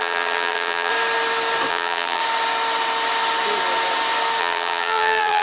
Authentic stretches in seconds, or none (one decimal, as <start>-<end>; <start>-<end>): 0.9-1.7; 2.2-4.4